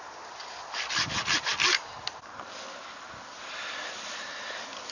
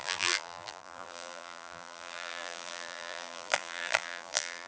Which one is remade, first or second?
second